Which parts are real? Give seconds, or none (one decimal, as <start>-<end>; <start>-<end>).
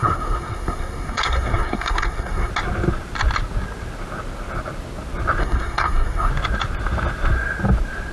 2.5-5.4; 6.3-8.1